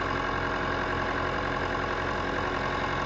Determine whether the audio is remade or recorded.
recorded